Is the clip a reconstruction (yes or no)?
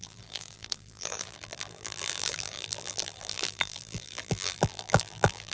yes